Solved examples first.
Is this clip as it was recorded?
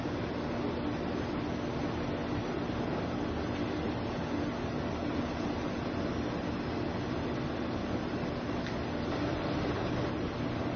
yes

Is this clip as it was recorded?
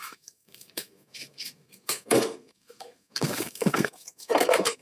no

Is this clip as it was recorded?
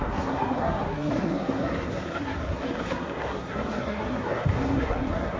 no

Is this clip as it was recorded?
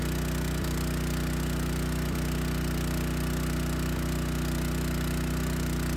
yes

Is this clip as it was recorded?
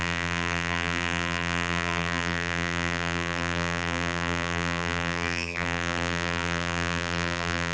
no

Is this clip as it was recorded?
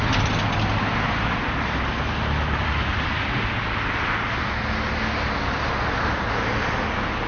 yes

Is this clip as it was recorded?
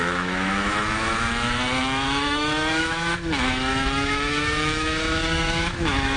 no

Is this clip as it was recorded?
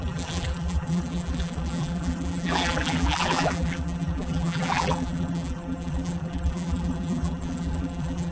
no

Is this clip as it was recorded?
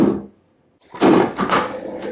yes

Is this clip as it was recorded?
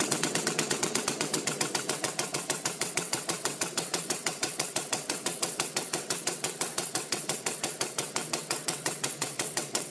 no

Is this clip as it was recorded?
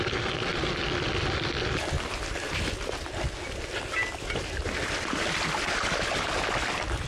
yes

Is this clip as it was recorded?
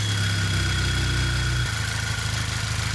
yes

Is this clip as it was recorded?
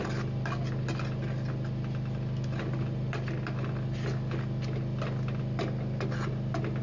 yes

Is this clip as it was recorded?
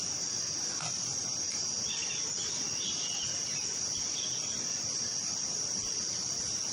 yes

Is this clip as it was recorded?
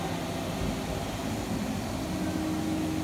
yes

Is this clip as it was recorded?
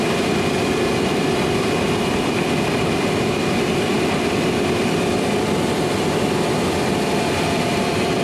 no